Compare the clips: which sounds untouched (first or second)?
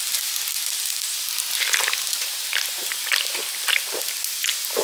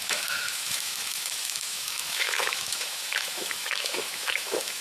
first